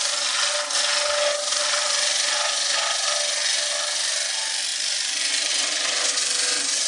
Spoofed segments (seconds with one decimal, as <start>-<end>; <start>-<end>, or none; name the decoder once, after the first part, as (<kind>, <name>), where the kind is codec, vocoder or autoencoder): 1.5-2.5 (vocoder, BigVGAN v2); 4.7-5.5